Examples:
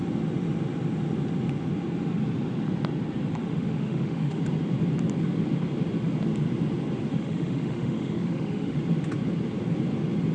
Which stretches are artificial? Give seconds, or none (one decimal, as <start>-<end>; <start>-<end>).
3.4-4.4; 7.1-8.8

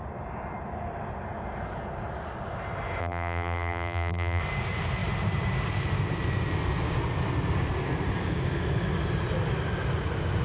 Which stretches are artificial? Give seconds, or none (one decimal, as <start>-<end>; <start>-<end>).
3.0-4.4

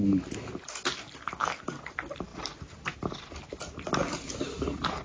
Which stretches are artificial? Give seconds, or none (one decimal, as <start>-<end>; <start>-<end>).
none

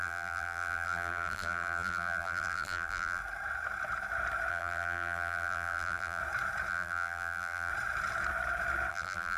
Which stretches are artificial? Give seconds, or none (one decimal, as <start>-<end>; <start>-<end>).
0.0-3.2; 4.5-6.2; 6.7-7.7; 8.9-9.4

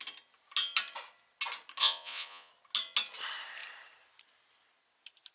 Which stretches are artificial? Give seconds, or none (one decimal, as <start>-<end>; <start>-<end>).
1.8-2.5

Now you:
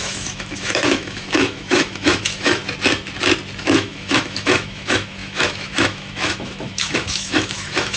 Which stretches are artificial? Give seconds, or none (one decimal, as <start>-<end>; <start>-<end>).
0.0-2.6; 3.6-8.0

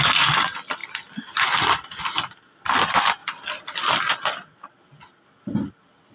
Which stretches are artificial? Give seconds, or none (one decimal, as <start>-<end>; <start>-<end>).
0.8-2.6